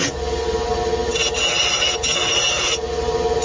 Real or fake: real